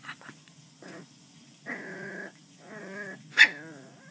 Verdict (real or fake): fake